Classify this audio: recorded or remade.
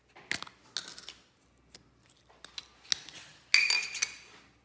recorded